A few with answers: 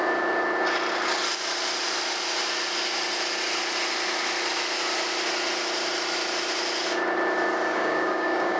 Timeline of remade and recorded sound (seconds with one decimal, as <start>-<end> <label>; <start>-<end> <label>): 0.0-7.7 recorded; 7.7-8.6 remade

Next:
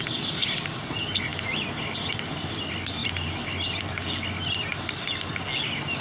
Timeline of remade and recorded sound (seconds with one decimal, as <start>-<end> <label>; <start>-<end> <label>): 0.0-6.0 recorded

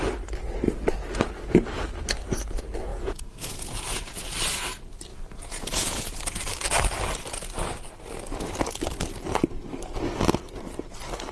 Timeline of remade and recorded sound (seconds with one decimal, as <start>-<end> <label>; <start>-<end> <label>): 0.0-2.9 recorded; 2.9-4.2 remade; 4.2-5.1 recorded; 5.1-6.2 remade; 6.2-11.3 recorded